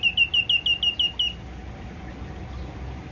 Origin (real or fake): real